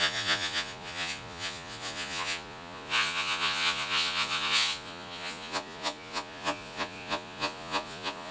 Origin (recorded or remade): remade